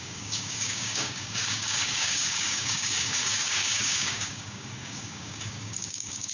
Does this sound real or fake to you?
fake